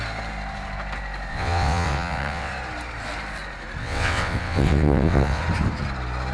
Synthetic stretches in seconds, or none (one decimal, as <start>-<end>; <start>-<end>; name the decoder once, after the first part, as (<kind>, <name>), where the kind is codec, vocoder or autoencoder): 1.3-2.5 (vocoder, WaveNeXt); 3.8-5.4

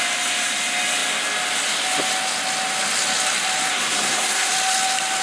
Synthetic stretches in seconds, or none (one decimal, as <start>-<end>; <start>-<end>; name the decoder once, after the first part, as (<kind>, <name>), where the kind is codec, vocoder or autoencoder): 3.7-4.5 (codec, SNAC)

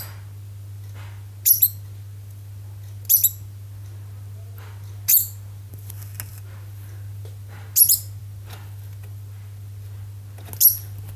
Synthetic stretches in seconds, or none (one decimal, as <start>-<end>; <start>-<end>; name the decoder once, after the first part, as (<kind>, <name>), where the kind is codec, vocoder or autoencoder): none

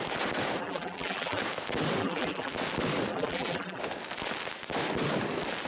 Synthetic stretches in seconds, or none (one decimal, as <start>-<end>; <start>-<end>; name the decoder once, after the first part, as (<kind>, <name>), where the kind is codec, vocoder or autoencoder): 0.6-1.4 (vocoder, BigVGAN v2); 2.0-2.5; 3.1-3.8

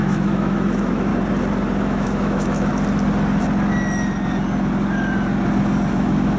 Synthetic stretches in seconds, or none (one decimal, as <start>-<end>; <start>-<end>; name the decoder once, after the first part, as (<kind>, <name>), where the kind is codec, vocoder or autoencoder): 0.0-1.1 (autoencoder, DAC-VAE); 1.8-2.7; 5.9-6.4

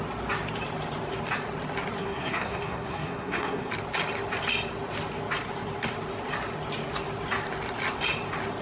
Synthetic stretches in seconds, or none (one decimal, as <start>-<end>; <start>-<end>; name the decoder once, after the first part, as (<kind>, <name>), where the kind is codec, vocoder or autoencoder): 2.0-3.7 (codec, SNAC)

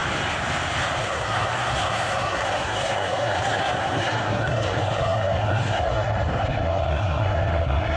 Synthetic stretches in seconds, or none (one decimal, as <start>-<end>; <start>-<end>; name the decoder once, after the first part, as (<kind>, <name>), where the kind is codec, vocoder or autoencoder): 1.0-8.0 (codec, SNAC)